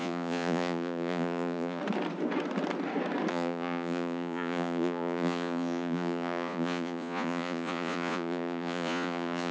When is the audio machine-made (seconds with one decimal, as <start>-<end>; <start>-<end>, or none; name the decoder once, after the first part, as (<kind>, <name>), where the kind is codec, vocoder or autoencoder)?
0.0-1.8 (vocoder, Vocos); 3.3-9.5